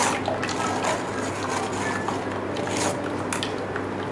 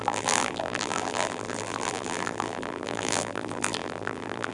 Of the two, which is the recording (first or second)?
first